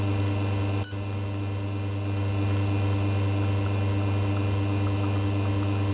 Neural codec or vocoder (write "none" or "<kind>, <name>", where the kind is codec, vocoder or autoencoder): none